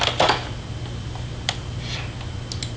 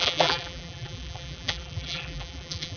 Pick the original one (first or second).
first